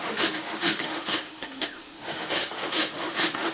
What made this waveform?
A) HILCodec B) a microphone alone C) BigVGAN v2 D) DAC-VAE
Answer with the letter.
D